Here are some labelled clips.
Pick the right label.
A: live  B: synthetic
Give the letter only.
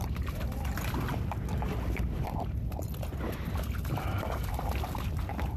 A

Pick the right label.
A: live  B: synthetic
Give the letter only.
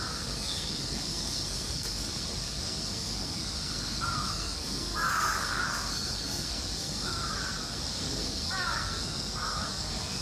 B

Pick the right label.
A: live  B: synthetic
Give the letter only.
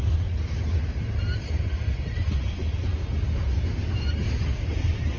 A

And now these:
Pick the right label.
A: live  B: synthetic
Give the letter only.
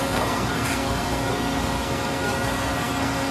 B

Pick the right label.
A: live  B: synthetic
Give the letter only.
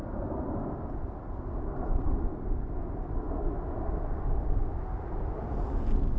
A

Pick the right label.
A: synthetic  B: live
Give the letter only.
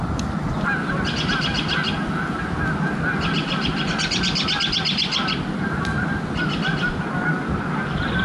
B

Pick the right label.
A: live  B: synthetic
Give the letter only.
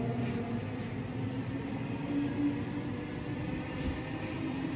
A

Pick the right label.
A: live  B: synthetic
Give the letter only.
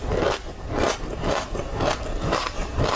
A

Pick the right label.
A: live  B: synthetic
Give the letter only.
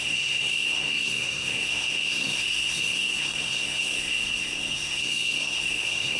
B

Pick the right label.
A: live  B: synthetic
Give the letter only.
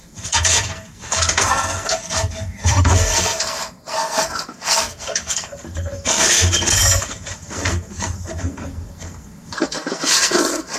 B